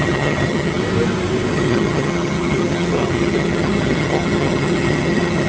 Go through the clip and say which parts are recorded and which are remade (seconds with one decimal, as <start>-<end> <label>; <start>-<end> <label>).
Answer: 0.0-0.8 remade; 0.8-1.5 recorded; 1.5-5.5 remade

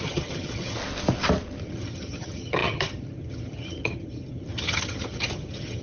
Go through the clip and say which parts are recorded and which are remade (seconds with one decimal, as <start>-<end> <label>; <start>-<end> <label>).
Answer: 0.0-0.8 remade; 0.8-1.6 recorded; 1.6-5.8 remade